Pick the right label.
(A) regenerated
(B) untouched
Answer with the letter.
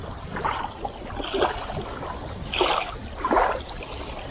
B